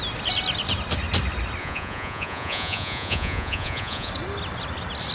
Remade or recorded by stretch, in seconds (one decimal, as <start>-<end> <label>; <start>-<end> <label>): 0.0-1.6 recorded; 1.6-4.1 remade; 4.1-5.1 recorded

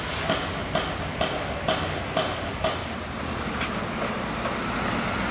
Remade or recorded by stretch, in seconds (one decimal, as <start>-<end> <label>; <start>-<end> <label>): 0.0-5.3 recorded

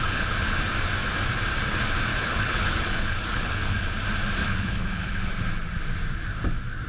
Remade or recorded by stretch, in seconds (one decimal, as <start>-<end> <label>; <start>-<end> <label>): 0.0-0.6 remade; 0.6-2.1 recorded; 2.1-3.9 remade; 3.9-4.4 recorded; 4.4-5.3 remade; 5.3-6.9 recorded

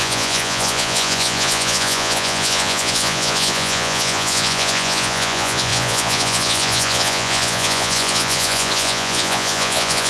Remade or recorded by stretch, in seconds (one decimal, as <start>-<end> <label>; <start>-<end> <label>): 0.0-10.1 remade

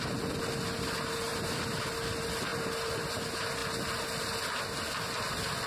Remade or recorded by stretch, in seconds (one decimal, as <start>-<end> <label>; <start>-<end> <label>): 0.0-1.3 recorded; 1.3-2.0 remade; 2.0-2.5 recorded; 2.5-3.2 remade; 3.2-3.6 recorded; 3.6-4.3 remade; 4.3-5.7 recorded